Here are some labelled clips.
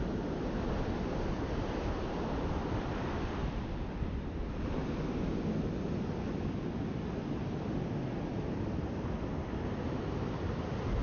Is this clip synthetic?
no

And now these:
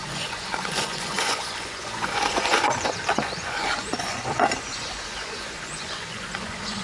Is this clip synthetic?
yes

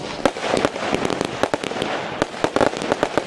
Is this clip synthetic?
no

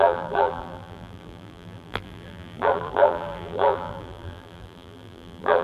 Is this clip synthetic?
yes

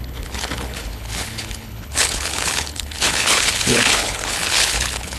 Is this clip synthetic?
yes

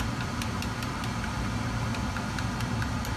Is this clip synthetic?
no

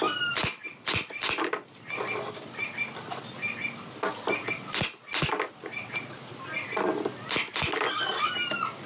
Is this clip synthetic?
no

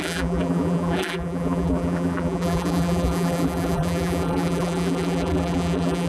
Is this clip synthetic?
yes